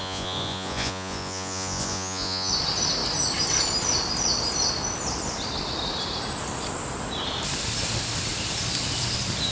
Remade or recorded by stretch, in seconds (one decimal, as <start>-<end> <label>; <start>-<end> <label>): 0.0-2.5 remade; 2.5-9.5 recorded